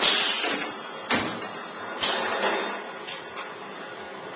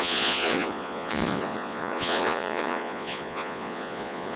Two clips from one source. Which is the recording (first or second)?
first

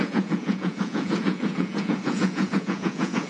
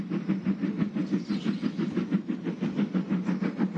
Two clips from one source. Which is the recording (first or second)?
second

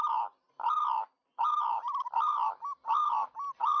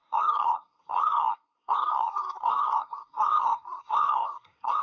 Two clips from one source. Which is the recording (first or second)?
first